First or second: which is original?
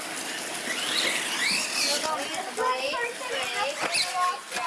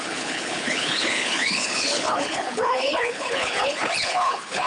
first